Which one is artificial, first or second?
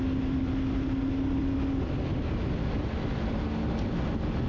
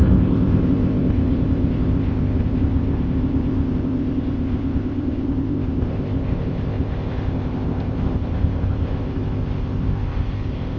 second